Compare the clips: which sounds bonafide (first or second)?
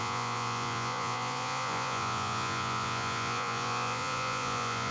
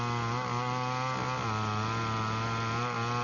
second